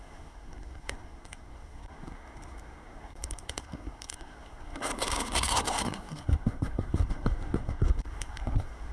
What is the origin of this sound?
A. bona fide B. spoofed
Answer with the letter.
B